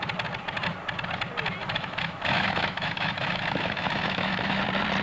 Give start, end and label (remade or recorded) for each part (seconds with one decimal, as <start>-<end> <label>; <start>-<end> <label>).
0.0-1.6 recorded; 1.6-4.6 remade; 4.6-5.0 recorded